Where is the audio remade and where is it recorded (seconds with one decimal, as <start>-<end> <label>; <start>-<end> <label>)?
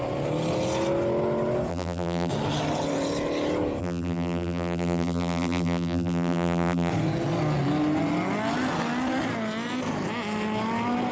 0.0-1.7 recorded; 1.7-2.3 remade; 2.3-3.8 recorded; 3.8-6.9 remade; 6.9-11.1 recorded